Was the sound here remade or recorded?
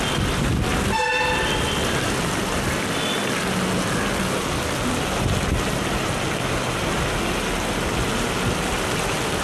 recorded